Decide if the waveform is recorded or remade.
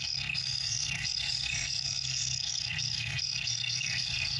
remade